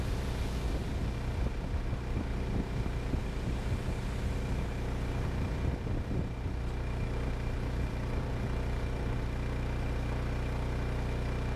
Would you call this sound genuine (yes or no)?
yes